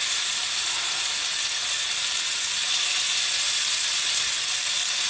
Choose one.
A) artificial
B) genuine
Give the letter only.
B